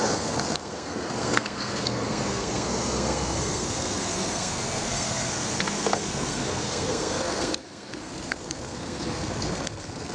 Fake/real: fake